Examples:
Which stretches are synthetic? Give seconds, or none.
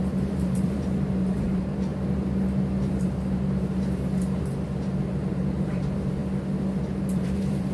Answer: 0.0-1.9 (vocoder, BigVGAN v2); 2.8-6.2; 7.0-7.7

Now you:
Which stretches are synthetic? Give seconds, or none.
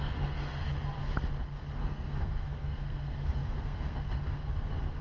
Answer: 0.0-0.7 (codec, SNAC); 1.8-5.0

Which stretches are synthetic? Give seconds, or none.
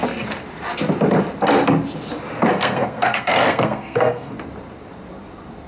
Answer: 2.5-4.3 (codec, SNAC)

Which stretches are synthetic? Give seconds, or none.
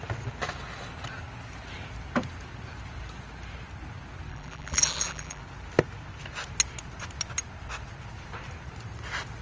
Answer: 4.3-5.4 (vocoder, BigVGAN v2)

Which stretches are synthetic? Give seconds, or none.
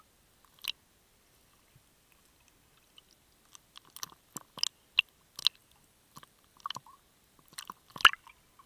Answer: 5.6-7.0 (vocoder, BigVGAN v2)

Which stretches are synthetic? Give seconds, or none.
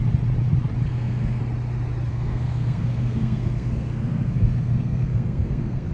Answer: 0.9-1.4 (codec, SNAC); 2.1-5.9